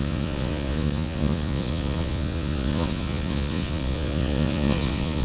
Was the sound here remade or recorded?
remade